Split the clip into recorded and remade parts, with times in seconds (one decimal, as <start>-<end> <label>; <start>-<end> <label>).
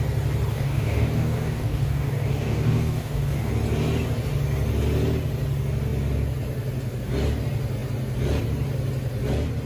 0.0-0.5 recorded; 0.5-3.5 remade; 3.5-9.7 recorded